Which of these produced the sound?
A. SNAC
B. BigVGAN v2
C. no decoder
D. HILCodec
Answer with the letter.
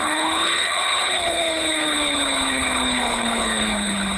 D